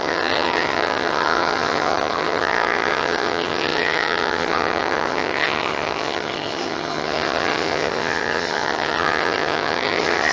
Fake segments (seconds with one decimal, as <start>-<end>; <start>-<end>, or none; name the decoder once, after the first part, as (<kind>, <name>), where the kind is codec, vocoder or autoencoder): 0.0-10.3 (vocoder, HiFi-GAN)